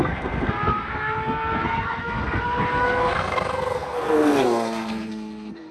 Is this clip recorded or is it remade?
remade